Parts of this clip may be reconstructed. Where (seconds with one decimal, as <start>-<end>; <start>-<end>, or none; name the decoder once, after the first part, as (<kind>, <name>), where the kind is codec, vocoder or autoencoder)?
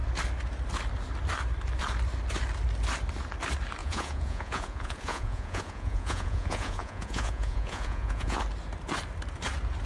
3.8-8.4 (vocoder, Vocos)